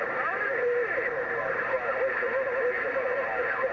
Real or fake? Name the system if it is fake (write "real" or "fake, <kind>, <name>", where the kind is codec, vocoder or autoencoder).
fake, vocoder, BigVGAN v2